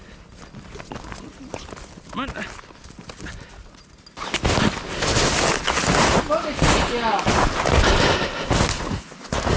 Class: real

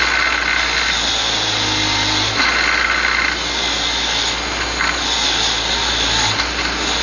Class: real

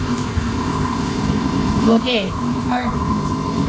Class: fake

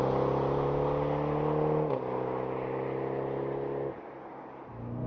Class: real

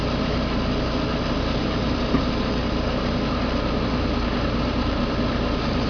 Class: fake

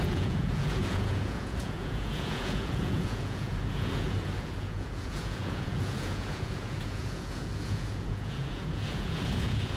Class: fake